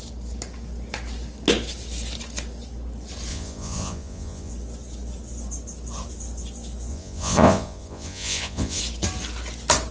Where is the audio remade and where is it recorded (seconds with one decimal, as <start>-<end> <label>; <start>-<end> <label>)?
0.0-3.3 recorded; 3.3-4.5 remade; 4.5-6.9 recorded; 6.9-8.8 remade; 8.8-9.9 recorded